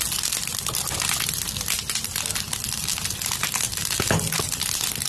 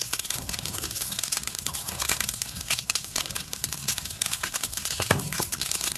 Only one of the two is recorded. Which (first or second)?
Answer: first